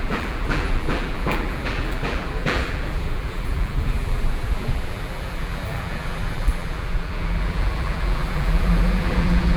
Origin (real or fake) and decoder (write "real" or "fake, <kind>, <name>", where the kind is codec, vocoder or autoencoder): fake, vocoder, BigVGAN v2